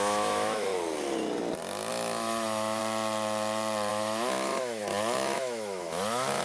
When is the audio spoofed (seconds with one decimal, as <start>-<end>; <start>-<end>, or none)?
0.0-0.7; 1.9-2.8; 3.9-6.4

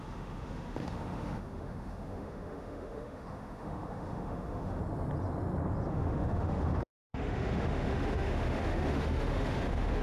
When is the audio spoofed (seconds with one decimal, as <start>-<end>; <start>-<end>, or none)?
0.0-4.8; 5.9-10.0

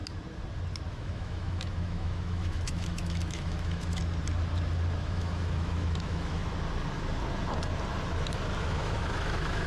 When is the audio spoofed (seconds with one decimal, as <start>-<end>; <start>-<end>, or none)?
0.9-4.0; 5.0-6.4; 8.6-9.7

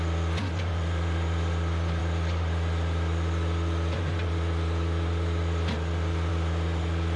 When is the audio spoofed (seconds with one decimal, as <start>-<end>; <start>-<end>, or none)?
none